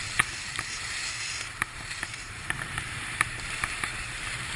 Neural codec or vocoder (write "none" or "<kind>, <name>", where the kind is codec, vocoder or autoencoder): vocoder, BigVGAN v2